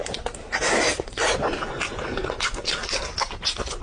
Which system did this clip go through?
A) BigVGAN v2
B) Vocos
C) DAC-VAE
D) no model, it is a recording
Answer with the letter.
D